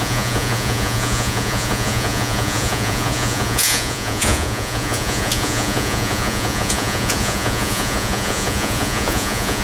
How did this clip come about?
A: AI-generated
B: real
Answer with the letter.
A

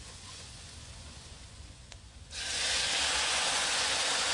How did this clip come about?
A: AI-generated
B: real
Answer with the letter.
A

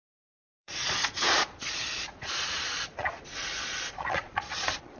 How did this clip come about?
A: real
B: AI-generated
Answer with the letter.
B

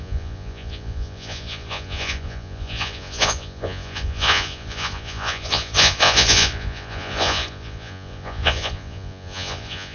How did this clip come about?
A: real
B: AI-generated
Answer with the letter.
B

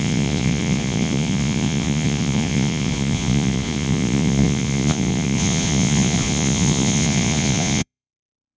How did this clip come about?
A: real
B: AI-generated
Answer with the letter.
B